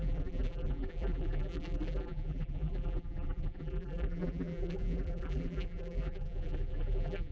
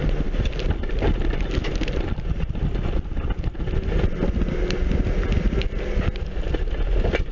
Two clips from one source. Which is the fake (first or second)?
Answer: first